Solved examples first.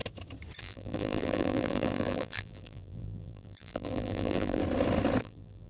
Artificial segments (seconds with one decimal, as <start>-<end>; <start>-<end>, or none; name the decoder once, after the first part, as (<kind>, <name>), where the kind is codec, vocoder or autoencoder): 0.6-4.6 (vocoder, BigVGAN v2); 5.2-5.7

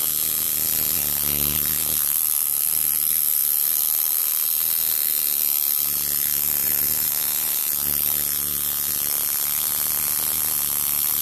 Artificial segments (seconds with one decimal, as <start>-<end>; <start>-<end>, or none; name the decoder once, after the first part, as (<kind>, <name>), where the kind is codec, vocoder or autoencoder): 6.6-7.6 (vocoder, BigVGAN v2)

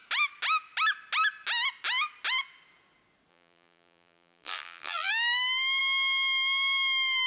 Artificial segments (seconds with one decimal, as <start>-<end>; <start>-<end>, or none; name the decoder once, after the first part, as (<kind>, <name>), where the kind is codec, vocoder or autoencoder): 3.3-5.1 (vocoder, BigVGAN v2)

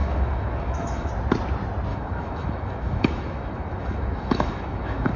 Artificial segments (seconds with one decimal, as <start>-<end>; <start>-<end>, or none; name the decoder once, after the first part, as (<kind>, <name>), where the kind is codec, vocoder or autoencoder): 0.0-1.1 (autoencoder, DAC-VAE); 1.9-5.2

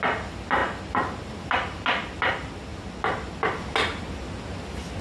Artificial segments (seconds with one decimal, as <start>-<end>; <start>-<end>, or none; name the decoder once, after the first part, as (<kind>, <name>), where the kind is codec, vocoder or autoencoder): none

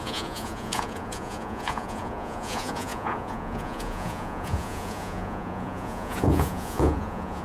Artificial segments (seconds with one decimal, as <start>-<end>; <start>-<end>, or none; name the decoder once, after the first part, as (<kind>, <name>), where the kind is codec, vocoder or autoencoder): 0.0-7.4 (vocoder, Vocos)